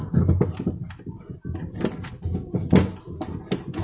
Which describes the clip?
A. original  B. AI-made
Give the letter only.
A